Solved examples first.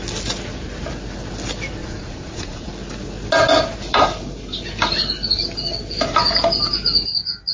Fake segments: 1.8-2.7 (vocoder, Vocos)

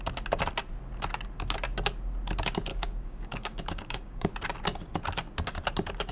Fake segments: 2.7-4.3 (codec, DAC)

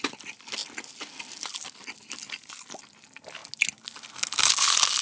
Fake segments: none